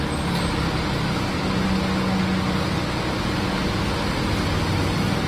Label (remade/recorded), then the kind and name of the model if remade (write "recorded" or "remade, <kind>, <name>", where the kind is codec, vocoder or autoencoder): recorded